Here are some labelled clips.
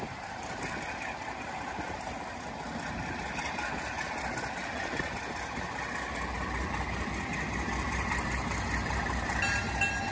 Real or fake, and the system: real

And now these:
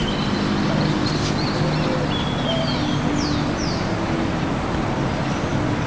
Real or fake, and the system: real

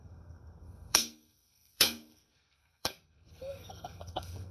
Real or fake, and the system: fake, codec, SNAC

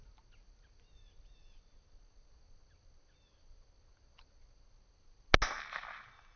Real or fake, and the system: real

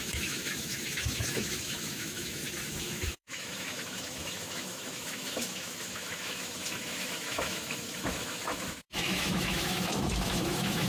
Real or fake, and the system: fake, autoencoder, DAC-VAE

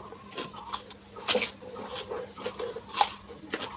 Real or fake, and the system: real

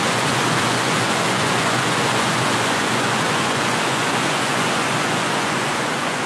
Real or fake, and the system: fake, vocoder, Vocos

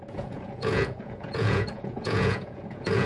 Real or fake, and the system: fake, vocoder, Vocos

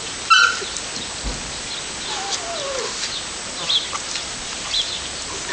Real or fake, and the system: real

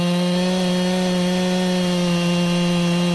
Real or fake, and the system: real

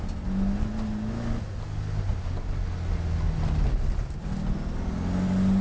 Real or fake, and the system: real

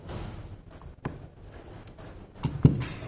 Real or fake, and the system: real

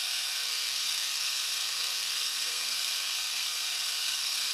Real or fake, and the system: fake, codec, SNAC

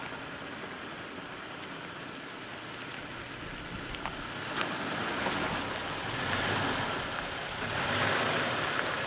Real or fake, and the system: real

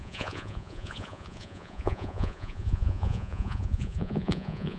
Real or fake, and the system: fake, vocoder, Vocos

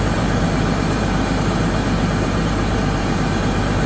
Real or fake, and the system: fake, vocoder, BigVGAN v2